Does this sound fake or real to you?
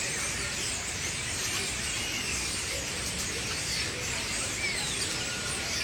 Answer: fake